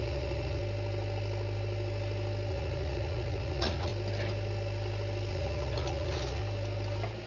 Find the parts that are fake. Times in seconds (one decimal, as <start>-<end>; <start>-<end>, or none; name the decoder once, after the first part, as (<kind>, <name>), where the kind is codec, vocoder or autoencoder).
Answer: 0.0-0.6 (vocoder, Vocos); 2.5-3.9; 5.3-6.4